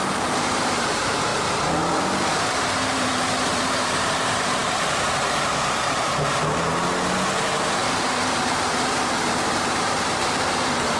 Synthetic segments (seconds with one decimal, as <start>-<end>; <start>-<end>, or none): 0.0-1.3; 2.3-11.0